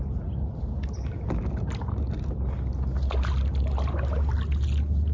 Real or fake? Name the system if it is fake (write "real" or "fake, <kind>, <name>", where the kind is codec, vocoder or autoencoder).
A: real